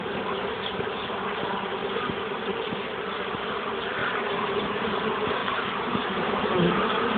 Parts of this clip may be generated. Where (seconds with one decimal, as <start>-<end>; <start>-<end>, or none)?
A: 4.0-5.0; 5.4-6.5